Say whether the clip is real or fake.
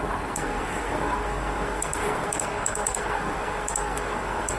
fake